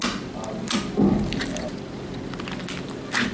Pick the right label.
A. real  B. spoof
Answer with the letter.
A